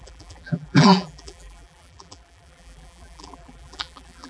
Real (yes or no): no